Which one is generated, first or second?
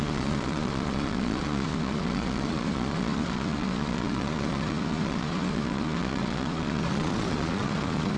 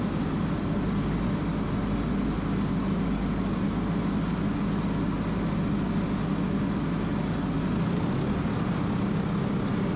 first